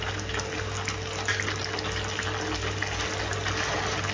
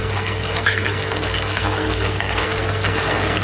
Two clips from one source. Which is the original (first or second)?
first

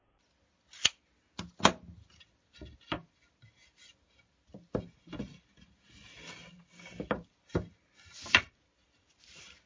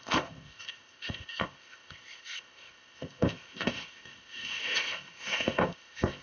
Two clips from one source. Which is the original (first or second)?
first